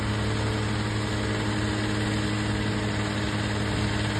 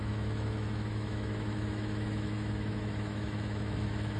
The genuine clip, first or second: first